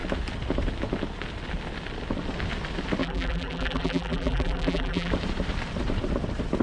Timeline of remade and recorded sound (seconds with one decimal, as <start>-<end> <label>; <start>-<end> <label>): 0.0-3.0 recorded; 3.0-5.1 remade; 5.1-6.6 recorded